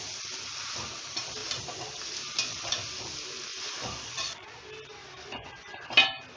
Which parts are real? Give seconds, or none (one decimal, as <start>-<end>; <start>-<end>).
0.0-3.5; 4.5-5.0; 5.9-6.4